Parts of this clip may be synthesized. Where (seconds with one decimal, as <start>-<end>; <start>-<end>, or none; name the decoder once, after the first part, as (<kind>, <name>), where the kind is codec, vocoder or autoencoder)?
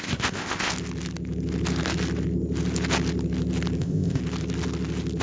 0.0-0.7 (codec, ZipCodec); 3.8-4.2